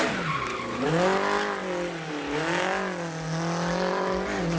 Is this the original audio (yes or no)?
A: yes